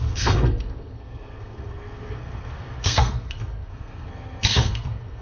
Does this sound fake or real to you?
fake